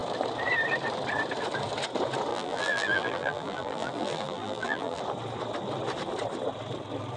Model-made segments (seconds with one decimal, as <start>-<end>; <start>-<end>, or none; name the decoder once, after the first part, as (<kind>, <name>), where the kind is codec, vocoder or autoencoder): 2.3-5.0 (vocoder, BigVGAN v2)